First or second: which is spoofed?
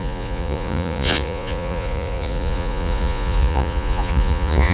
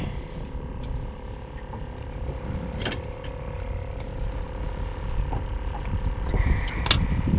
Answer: first